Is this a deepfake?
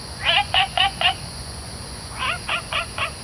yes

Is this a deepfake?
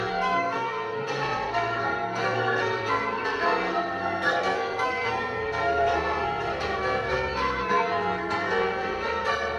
yes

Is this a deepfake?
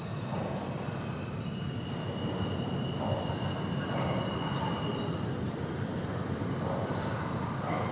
no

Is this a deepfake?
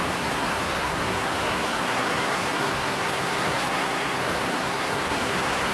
yes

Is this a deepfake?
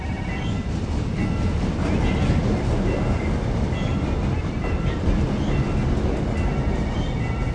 no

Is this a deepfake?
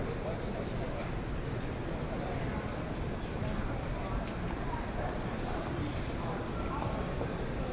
yes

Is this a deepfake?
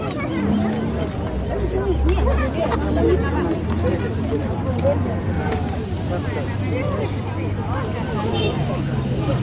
no